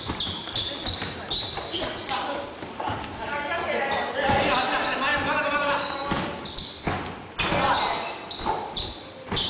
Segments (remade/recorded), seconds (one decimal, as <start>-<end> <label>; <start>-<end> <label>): 0.0-9.5 recorded